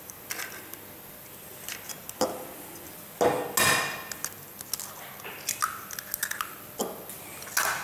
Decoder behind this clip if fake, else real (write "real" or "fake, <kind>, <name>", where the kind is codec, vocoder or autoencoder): real